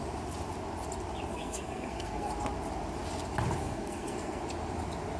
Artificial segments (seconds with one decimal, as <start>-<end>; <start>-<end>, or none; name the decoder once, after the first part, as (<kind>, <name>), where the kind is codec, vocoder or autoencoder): 1.3-2.3 (codec, SNAC); 3.6-4.4